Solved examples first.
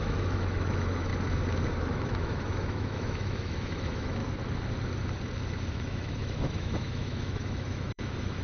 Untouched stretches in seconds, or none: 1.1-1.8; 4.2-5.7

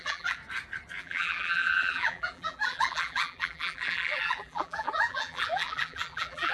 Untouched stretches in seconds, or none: 0.4-1.0